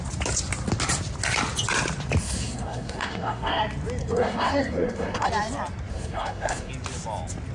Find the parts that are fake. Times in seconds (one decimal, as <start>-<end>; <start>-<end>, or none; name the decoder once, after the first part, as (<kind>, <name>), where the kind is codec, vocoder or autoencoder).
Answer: 2.2-3.6 (codec, SNAC); 4.0-5.3; 5.9-6.7